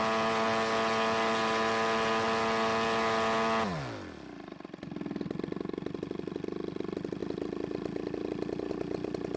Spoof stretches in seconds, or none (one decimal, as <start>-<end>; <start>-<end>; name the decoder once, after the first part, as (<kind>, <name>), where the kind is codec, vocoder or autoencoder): none